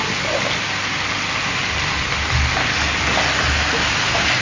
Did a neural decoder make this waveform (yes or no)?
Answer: no